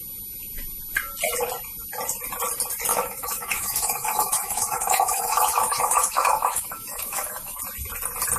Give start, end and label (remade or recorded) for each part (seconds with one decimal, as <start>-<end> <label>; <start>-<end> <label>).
0.0-2.9 recorded; 2.9-7.6 remade; 7.6-8.4 recorded